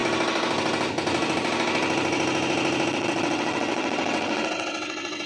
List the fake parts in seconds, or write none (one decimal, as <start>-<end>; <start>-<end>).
2.9-5.3